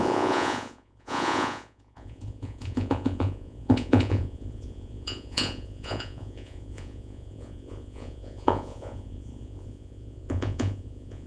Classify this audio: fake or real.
fake